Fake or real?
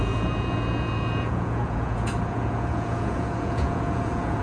fake